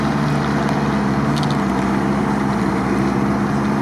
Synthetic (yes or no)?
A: no